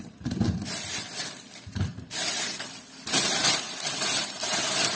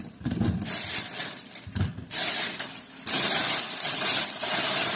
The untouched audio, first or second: first